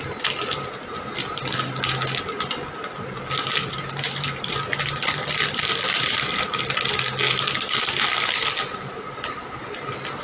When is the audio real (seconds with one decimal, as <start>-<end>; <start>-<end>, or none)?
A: 0.0-3.6; 4.5-10.2